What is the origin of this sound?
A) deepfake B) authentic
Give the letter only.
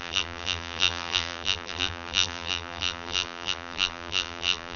A